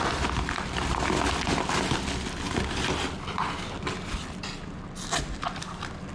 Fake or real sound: real